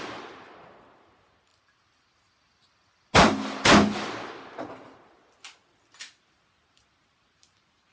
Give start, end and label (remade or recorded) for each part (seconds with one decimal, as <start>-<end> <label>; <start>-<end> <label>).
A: 0.0-1.5 remade; 1.5-6.2 recorded; 6.2-7.9 remade